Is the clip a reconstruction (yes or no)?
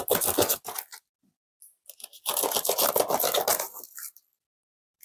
no